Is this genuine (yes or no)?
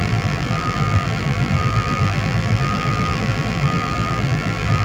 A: no